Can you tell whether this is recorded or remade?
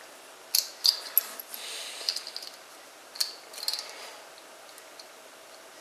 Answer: recorded